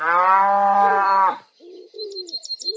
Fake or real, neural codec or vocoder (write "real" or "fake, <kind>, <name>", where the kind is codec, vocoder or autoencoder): fake, vocoder, BigVGAN v2